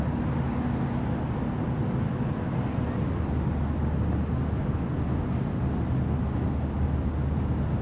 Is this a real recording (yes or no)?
yes